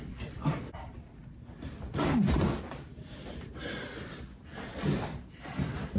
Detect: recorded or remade remade